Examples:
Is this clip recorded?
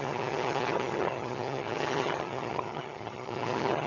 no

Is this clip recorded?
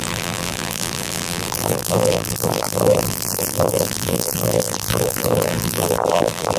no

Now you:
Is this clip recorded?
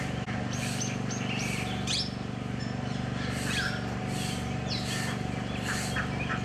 yes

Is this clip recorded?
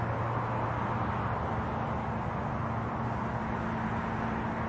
yes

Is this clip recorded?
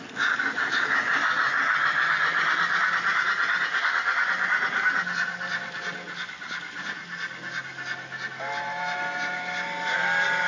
yes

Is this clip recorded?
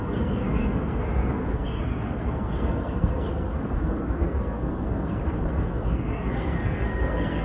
no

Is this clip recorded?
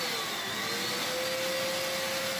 yes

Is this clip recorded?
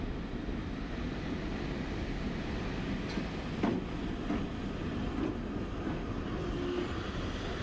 yes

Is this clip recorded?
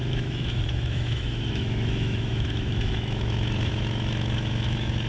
no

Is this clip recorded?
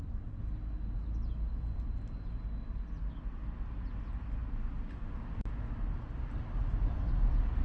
yes